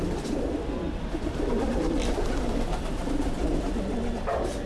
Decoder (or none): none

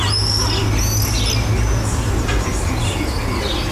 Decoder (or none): none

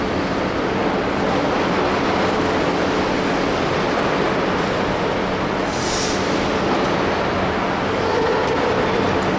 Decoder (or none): none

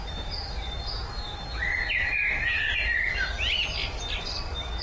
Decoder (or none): none